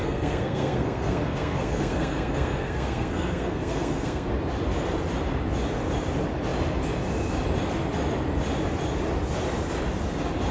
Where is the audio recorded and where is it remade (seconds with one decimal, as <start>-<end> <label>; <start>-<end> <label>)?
0.0-4.3 remade; 4.3-10.5 recorded

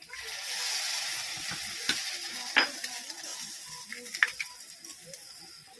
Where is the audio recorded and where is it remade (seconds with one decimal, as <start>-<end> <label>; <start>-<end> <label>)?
0.0-5.8 recorded

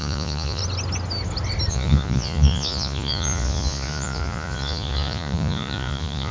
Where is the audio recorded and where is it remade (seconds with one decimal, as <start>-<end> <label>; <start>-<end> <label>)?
0.0-0.6 remade; 0.6-1.7 recorded; 1.7-6.3 remade

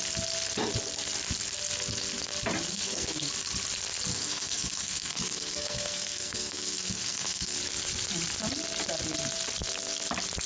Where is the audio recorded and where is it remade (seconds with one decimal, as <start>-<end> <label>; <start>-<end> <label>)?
0.0-2.7 recorded; 2.7-3.3 remade; 3.3-4.1 recorded; 4.1-7.6 remade; 7.6-10.5 recorded

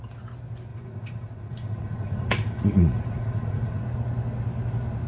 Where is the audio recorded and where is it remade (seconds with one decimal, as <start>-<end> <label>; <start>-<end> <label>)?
0.0-0.7 recorded; 0.7-3.8 remade; 3.8-5.1 recorded

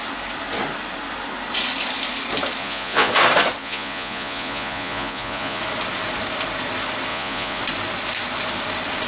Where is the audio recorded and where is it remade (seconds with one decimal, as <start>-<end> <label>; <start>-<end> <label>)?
0.0-2.6 recorded; 2.6-3.1 remade; 3.1-3.6 recorded; 3.6-5.6 remade; 5.6-7.1 recorded; 7.1-7.6 remade; 7.6-9.1 recorded

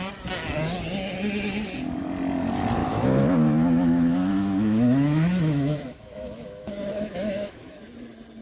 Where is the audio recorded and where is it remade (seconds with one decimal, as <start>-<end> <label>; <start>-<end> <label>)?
0.0-2.8 recorded; 2.8-7.8 remade; 7.8-8.4 recorded

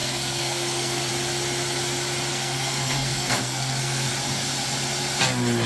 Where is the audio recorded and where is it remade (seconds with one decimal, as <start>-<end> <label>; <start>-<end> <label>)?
0.0-1.1 remade; 1.1-2.3 recorded; 2.3-4.1 remade; 4.1-5.7 recorded